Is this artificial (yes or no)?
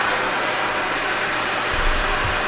yes